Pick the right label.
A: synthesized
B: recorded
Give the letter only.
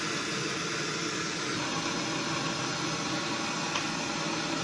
B